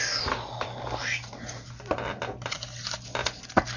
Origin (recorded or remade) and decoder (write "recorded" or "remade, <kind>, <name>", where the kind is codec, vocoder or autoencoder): recorded